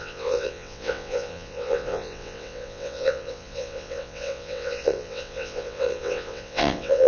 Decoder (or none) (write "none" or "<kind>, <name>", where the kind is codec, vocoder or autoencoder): vocoder, WaveNeXt